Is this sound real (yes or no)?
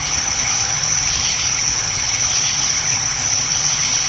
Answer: no